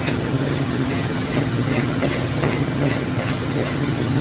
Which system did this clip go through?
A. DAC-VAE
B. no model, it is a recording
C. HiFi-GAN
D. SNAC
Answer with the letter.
C